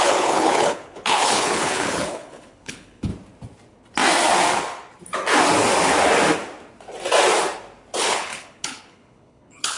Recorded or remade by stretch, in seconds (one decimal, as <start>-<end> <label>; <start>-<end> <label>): 0.0-3.1 remade; 3.1-8.0 recorded; 8.0-9.8 remade